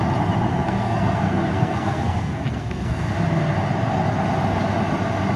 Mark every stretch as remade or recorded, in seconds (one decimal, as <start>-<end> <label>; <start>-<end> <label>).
0.0-0.5 recorded; 0.5-3.1 remade; 3.1-5.4 recorded